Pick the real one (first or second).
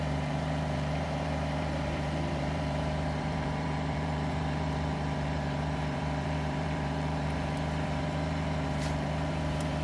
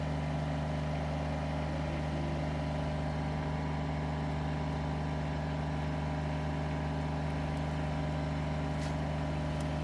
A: second